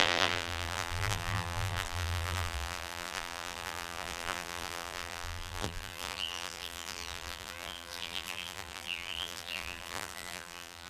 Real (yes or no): no